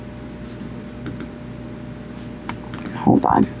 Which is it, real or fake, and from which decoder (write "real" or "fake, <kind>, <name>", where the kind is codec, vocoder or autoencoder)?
real